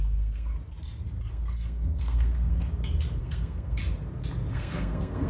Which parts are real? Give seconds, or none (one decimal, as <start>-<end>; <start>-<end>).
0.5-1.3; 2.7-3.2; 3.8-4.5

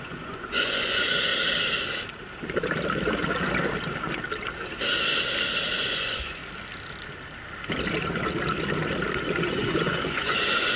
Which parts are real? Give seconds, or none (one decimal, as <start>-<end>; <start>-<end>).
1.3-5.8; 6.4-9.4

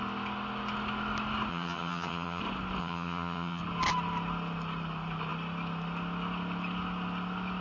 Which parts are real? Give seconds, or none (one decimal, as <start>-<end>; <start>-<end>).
0.0-1.5; 2.4-2.8; 3.6-7.6

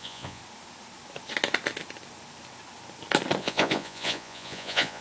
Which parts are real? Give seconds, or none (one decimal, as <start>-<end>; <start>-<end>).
0.4-3.4